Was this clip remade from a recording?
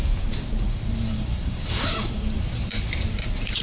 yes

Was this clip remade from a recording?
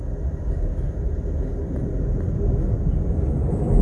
no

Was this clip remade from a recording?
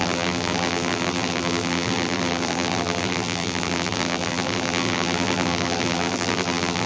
yes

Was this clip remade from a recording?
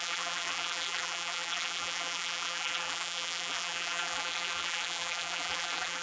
yes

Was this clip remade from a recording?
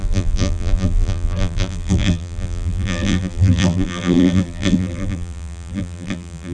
yes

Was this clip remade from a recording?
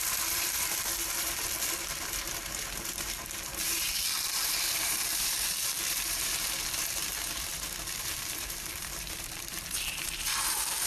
yes